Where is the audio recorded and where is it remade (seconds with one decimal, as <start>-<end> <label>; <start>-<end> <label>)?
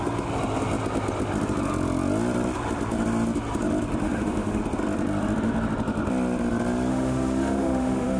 0.0-4.0 recorded; 4.0-4.6 remade; 4.6-6.9 recorded; 6.9-8.2 remade